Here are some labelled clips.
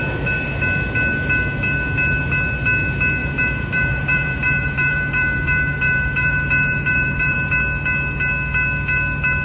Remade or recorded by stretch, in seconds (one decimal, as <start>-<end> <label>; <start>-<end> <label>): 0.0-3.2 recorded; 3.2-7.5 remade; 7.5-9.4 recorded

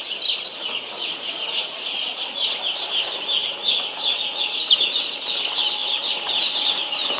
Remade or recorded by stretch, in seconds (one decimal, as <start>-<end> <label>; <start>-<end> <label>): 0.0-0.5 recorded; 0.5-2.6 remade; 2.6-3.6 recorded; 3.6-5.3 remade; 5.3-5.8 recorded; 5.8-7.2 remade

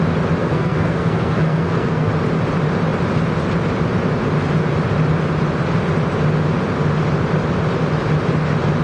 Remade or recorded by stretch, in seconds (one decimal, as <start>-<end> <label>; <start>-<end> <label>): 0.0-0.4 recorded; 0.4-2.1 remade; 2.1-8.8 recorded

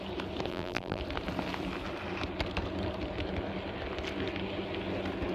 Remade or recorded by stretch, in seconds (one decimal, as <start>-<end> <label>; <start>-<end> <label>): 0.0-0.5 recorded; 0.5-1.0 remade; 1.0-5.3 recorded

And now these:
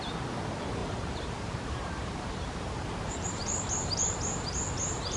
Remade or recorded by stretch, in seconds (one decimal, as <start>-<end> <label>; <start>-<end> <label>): 0.0-0.8 recorded; 0.8-3.9 remade; 3.9-5.2 recorded

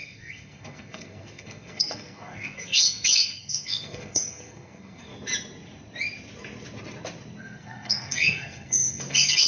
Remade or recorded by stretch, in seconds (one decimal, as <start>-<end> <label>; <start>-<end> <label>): 0.0-5.1 remade; 5.1-7.4 recorded; 7.4-9.5 remade